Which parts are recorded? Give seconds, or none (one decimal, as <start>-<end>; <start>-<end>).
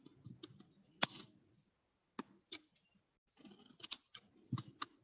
0.0-5.0